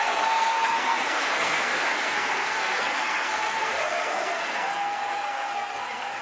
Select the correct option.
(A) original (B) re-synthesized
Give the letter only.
B